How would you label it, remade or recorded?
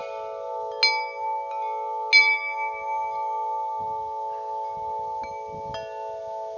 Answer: recorded